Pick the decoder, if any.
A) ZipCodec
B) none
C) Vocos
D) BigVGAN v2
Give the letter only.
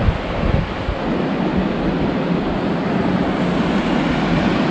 B